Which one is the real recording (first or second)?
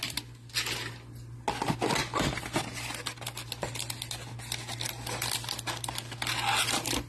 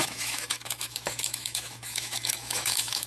first